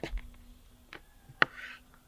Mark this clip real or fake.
real